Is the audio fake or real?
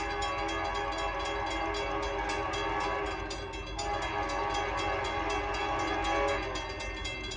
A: real